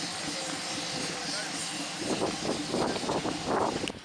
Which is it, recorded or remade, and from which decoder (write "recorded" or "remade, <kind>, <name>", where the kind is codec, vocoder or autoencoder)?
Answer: recorded